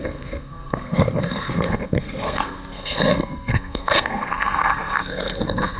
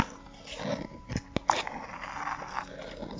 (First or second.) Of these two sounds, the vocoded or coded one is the first